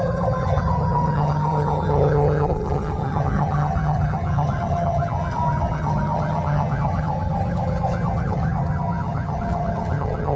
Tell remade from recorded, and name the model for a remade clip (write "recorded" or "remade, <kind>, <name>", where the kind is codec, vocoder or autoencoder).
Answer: remade, vocoder, HiFi-GAN